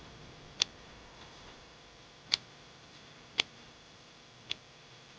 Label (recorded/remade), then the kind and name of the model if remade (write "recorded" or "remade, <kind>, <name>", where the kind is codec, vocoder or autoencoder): remade, vocoder, BigVGAN v2